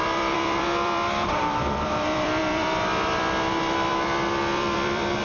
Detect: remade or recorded remade